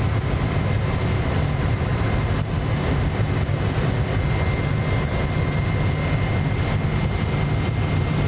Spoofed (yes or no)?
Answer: no